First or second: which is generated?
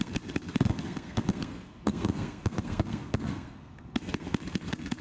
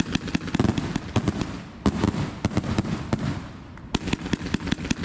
first